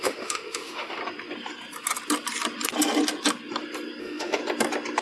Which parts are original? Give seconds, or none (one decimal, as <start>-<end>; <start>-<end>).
1.0-4.0; 4.4-5.0